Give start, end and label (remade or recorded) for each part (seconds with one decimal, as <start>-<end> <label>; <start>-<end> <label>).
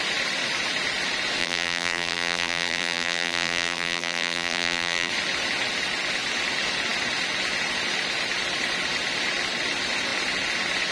0.0-1.4 recorded; 1.4-5.1 remade; 5.1-10.9 recorded